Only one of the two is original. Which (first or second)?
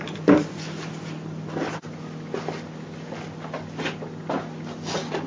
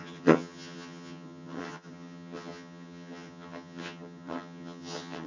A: first